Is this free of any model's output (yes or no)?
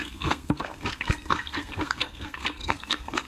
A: no